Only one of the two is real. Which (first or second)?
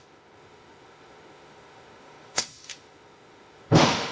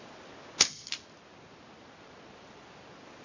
second